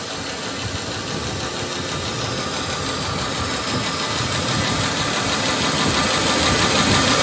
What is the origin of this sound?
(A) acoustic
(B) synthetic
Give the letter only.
A